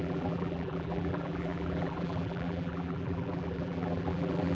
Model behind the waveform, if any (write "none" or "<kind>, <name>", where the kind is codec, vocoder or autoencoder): vocoder, BigVGAN v2